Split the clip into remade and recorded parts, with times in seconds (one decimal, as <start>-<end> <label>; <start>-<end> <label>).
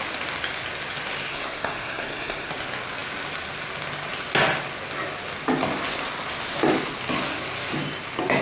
0.0-1.3 recorded; 1.3-2.5 remade; 2.5-8.4 recorded